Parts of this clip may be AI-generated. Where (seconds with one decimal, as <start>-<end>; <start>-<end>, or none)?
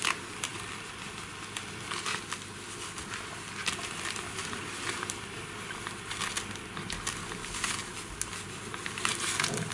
none